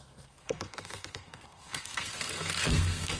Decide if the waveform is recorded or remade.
remade